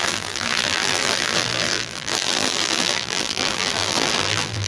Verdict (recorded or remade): remade